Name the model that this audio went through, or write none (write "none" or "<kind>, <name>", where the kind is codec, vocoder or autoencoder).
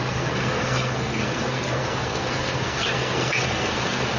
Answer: codec, SNAC